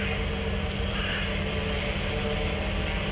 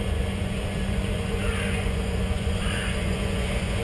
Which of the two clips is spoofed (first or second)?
second